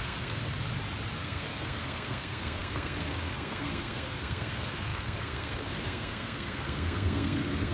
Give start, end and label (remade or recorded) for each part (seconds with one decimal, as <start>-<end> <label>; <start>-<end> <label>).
0.0-0.4 remade; 0.4-1.2 recorded; 1.2-7.7 remade